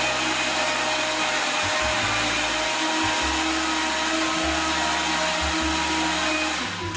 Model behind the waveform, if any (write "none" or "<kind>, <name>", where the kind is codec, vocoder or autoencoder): none